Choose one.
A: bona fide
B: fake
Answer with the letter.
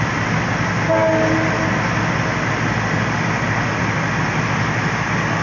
A